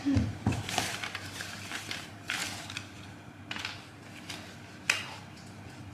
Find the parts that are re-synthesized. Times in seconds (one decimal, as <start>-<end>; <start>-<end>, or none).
0.0-2.4